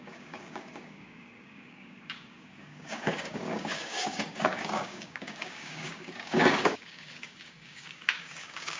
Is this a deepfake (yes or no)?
yes